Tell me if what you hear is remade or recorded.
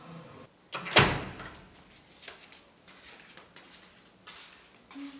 recorded